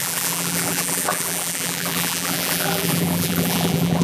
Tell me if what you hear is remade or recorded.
remade